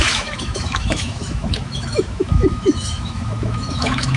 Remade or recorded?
remade